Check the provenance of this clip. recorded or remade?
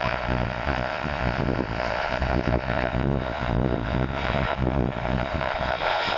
remade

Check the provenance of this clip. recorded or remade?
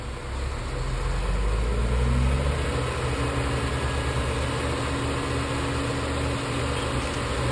recorded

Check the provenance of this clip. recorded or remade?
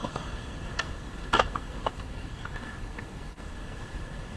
remade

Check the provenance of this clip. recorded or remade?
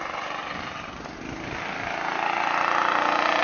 recorded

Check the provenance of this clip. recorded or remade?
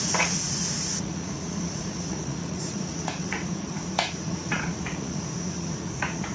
remade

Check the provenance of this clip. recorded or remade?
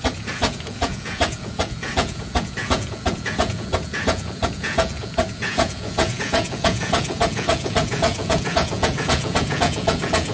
remade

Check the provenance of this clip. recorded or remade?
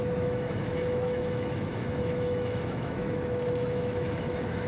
remade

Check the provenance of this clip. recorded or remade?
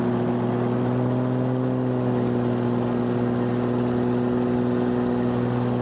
recorded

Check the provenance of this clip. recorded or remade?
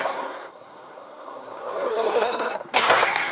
remade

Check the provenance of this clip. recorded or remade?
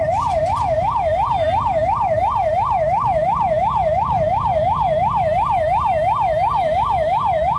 recorded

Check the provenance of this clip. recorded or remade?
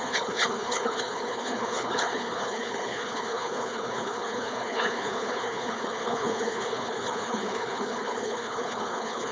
remade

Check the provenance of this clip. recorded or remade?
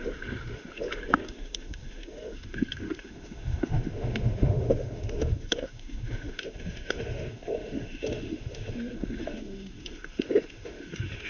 remade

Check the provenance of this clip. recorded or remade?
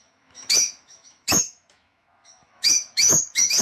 remade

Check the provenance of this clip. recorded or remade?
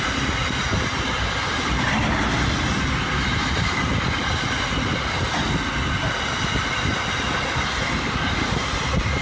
recorded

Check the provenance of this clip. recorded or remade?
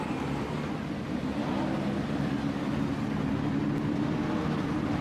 recorded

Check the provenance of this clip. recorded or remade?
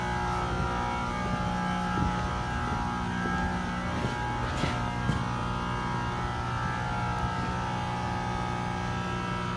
recorded